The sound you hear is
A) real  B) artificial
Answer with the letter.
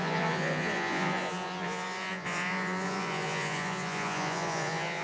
B